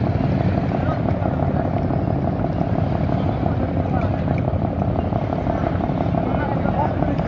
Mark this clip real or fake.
real